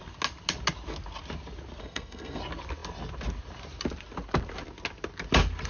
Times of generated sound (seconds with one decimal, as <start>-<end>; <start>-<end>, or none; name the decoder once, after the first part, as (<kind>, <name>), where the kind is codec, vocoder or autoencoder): 1.8-2.4 (codec, SNAC)